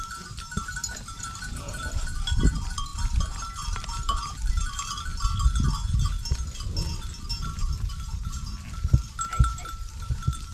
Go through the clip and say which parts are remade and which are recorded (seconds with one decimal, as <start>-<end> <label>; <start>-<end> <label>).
0.0-5.1 remade; 5.1-7.3 recorded; 7.3-10.5 remade